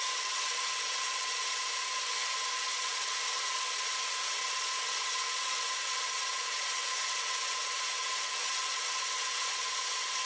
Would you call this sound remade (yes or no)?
yes